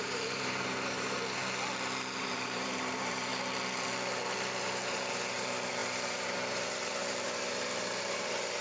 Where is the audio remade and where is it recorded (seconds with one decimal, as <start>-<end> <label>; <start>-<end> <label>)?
0.0-1.4 remade; 1.4-2.2 recorded; 2.2-3.3 remade; 3.3-4.6 recorded; 4.6-8.6 remade